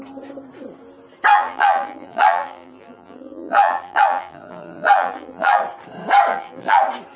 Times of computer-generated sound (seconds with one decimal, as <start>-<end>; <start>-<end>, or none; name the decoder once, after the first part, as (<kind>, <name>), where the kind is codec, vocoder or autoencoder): 1.3-5.6 (vocoder, BigVGAN v2); 6.3-6.8

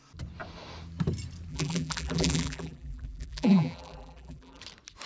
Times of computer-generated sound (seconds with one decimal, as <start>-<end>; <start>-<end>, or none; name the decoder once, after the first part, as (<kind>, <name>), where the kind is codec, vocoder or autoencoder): 1.5-4.6 (vocoder, BigVGAN v2)

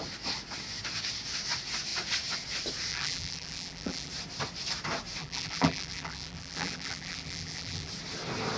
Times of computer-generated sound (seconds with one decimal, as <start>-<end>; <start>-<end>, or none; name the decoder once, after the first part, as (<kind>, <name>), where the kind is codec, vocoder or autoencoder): 2.9-4.1 (vocoder, BigVGAN v2); 5.2-7.9

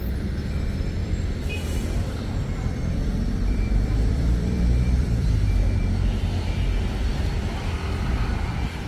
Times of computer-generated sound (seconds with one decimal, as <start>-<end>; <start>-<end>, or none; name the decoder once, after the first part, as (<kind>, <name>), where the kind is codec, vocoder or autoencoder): 1.0-5.8 (vocoder, BigVGAN v2)

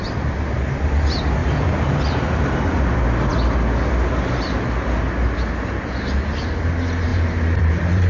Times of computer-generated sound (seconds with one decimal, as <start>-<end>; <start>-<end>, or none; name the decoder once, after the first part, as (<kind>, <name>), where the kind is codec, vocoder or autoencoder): 1.4-2.4 (vocoder, BigVGAN v2); 7.1-8.1

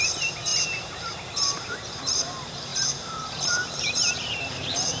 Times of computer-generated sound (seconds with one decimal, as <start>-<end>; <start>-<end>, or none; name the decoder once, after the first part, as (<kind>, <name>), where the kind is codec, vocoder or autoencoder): 0.0-5.0 (vocoder, BigVGAN v2)

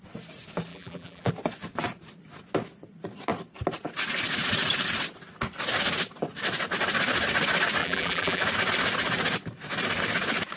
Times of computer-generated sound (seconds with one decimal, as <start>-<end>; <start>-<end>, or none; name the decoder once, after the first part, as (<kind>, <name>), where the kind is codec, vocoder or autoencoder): 0.7-1.3 (vocoder, BigVGAN v2); 7.8-8.4